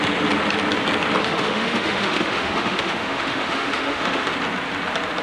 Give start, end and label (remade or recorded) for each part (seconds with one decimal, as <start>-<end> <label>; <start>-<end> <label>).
0.0-1.2 recorded; 1.2-4.3 remade; 4.3-5.2 recorded